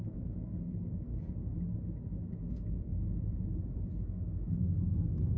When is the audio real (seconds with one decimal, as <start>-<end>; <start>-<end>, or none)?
1.1-2.5; 3.0-4.0